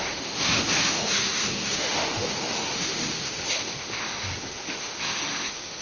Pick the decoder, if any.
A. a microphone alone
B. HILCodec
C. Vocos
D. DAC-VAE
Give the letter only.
D